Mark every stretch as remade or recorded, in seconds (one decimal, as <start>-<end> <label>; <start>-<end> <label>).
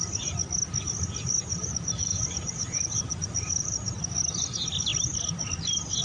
0.0-1.4 recorded; 1.4-4.0 remade; 4.0-6.0 recorded